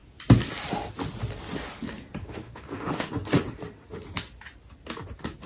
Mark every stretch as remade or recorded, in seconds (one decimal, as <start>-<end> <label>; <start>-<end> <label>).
0.0-2.2 recorded; 2.2-3.1 remade; 3.1-5.5 recorded